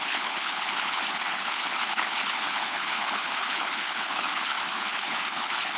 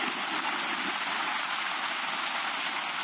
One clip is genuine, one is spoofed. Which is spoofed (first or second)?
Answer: first